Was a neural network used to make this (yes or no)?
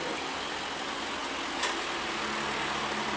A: no